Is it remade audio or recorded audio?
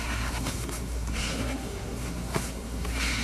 remade